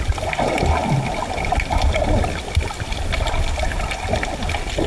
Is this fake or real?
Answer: real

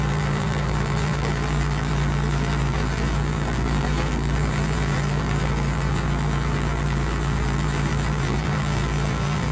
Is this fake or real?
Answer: fake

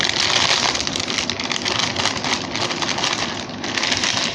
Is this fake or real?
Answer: real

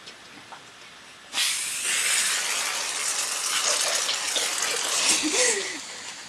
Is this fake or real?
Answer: real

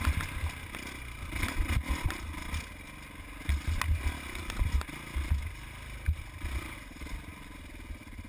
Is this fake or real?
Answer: real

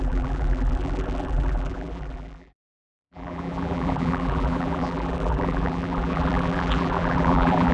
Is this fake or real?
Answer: fake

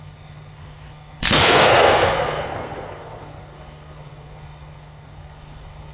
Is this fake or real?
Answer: fake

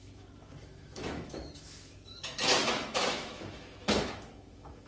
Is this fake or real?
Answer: fake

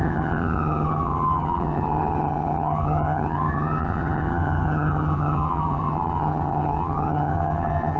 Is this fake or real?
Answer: fake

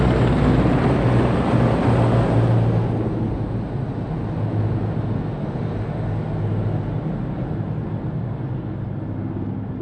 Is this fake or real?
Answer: real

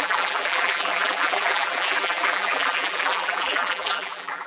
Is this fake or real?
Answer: fake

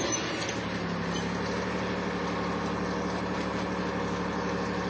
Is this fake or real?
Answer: real